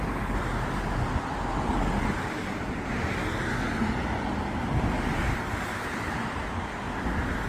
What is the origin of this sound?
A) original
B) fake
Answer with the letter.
A